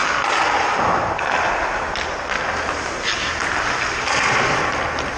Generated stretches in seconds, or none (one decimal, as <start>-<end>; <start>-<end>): none